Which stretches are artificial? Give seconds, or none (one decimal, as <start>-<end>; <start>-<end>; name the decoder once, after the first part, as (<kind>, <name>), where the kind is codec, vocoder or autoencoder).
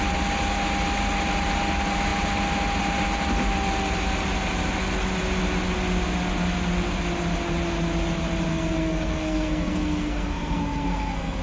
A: 8.5-11.4 (codec, SNAC)